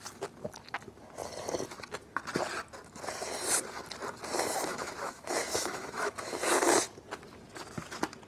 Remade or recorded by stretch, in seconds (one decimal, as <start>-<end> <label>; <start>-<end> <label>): 0.0-4.7 recorded; 4.7-6.5 remade; 6.5-8.3 recorded